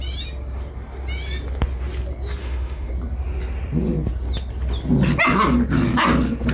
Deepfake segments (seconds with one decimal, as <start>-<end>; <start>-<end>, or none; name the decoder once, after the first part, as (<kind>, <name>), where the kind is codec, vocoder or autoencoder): 2.4-2.9 (autoencoder, DAC-VAE)